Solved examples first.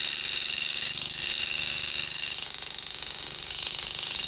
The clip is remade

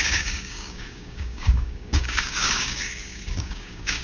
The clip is remade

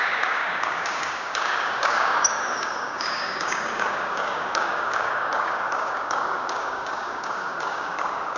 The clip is remade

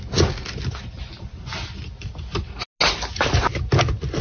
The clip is recorded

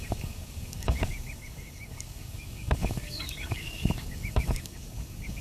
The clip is remade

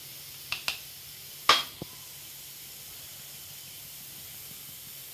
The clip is recorded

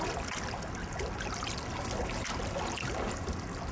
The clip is recorded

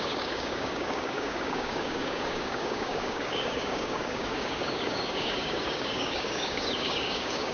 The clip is remade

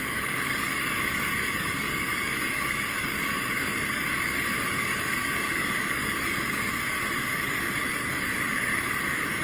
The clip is remade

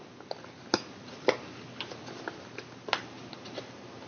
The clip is recorded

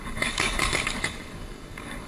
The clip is remade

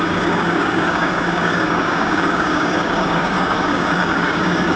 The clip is remade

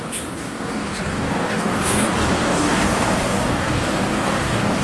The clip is remade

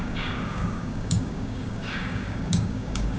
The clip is remade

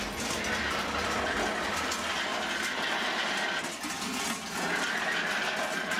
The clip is recorded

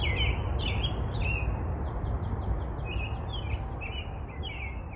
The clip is recorded